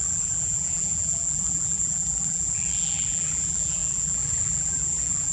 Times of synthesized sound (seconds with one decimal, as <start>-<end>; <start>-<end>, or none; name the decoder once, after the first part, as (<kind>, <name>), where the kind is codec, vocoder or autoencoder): 0.0-5.3 (vocoder, BigVGAN v2)